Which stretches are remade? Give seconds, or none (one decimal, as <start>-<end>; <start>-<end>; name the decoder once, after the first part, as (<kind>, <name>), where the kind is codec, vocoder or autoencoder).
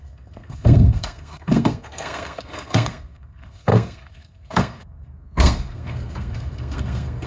0.0-7.3 (codec, SNAC)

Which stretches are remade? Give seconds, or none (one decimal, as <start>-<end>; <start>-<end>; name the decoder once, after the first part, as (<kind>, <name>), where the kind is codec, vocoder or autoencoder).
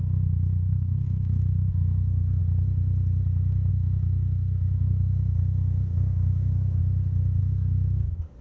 0.0-2.4 (codec, SNAC); 3.7-6.8; 7.4-8.4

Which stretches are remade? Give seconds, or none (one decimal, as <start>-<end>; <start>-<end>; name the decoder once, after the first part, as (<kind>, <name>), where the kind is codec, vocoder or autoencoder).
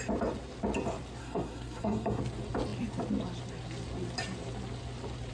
1.2-2.2 (codec, SNAC)